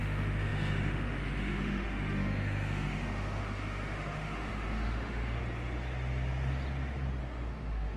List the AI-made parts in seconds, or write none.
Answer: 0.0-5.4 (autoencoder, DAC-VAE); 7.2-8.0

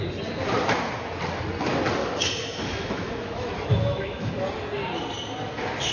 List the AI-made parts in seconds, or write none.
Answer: 2.0-4.3 (autoencoder, DAC-VAE)